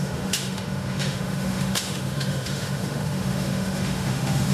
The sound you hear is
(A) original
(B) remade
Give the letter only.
B